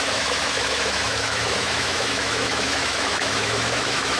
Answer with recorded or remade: remade